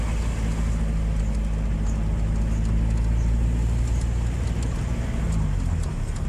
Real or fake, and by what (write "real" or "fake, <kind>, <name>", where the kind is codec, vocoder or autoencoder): real